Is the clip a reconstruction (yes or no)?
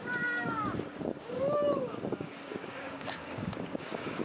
yes